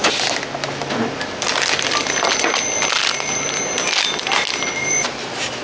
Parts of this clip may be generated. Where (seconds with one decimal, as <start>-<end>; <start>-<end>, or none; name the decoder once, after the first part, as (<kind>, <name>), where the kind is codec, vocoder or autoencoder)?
none